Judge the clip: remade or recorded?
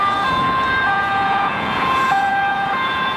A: remade